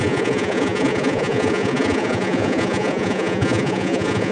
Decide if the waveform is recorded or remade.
remade